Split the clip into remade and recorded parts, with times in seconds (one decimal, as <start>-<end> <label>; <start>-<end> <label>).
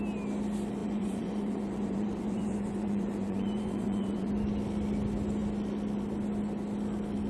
0.0-0.8 recorded; 0.8-4.3 remade; 4.3-7.3 recorded